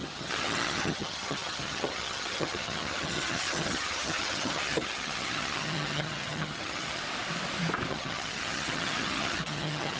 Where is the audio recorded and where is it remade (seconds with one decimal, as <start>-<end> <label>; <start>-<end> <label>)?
0.0-7.0 remade; 7.0-7.9 recorded; 7.9-10.0 remade